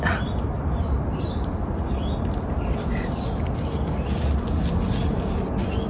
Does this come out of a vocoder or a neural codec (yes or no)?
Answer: no